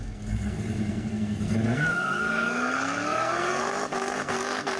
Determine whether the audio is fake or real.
fake